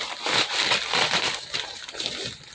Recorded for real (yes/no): yes